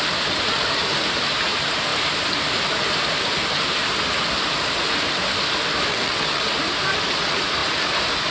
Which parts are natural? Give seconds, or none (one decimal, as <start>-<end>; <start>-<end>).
0.0-5.9; 6.4-8.3